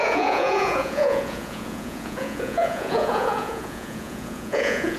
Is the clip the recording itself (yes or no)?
no